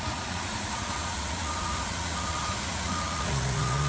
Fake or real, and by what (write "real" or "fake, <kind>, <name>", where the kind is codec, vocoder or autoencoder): fake, vocoder, Vocos